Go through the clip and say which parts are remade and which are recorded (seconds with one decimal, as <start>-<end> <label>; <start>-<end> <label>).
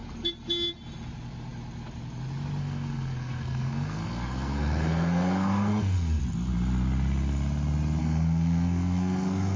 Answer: 0.0-2.6 recorded; 2.6-6.2 remade; 6.2-8.0 recorded; 8.0-9.6 remade